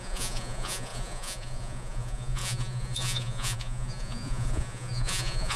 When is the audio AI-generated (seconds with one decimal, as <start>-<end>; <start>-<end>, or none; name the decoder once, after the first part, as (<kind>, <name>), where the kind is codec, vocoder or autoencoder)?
0.0-5.6 (vocoder, Vocos)